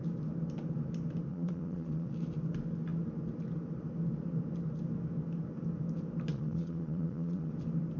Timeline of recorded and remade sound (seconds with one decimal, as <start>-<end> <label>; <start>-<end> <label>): 0.0-1.3 recorded; 1.3-2.1 remade; 2.1-6.3 recorded; 6.3-7.5 remade; 7.5-8.0 recorded